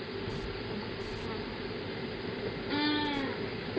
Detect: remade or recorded recorded